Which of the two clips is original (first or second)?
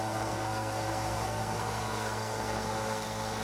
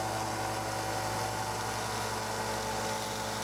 second